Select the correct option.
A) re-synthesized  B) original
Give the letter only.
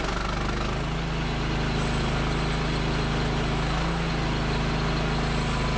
B